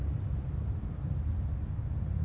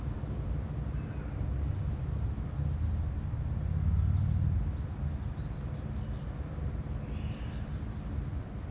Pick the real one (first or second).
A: second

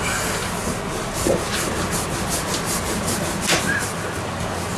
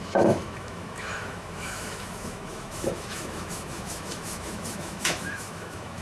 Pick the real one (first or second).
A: first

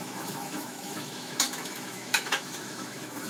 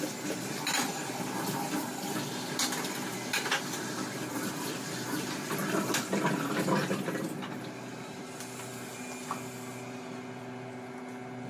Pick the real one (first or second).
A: second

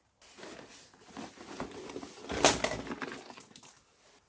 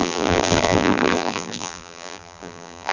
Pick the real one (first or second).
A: first